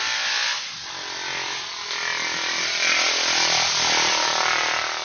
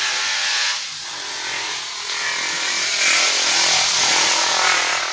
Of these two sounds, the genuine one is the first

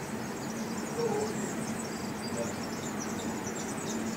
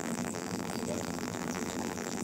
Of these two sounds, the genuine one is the first